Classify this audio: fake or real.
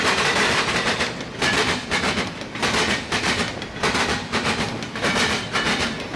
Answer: real